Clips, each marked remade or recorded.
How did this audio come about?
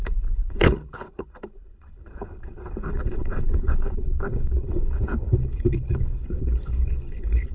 remade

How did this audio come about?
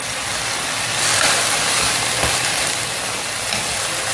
recorded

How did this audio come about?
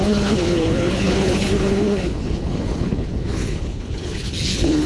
remade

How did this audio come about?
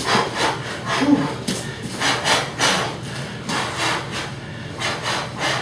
recorded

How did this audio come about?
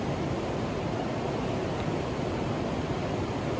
recorded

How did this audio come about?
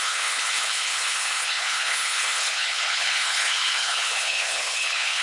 remade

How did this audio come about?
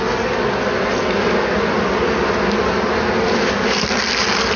recorded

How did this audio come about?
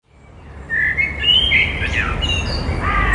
recorded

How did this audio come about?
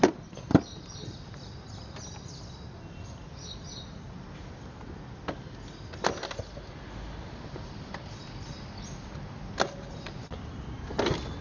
recorded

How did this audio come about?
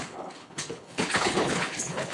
remade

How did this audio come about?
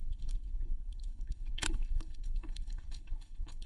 remade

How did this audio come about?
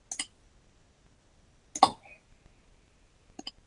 recorded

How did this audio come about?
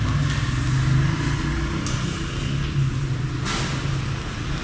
recorded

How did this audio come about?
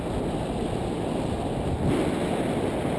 recorded